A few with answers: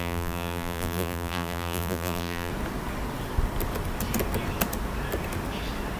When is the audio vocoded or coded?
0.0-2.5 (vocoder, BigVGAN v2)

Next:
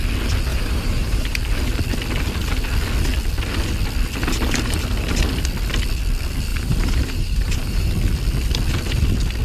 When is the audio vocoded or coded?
0.5-1.4 (vocoder, BigVGAN v2); 6.5-7.9

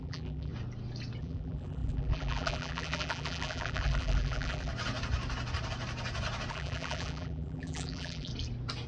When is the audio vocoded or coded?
0.0-0.5 (vocoder, BigVGAN v2); 1.2-4.7; 6.5-8.3

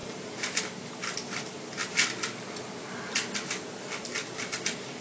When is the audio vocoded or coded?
0.0-0.6 (vocoder, BigVGAN v2)

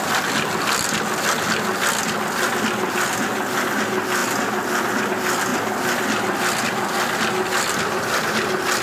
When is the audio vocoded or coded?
none

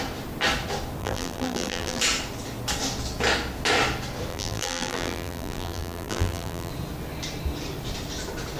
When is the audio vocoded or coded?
1.0-2.0 (vocoder, BigVGAN v2); 4.3-6.7

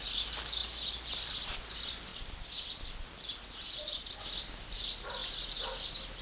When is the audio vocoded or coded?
0.6-1.7 (vocoder, BigVGAN v2); 2.1-4.2